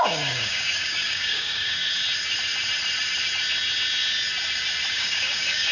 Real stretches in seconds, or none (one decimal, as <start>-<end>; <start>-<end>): 1.8-4.9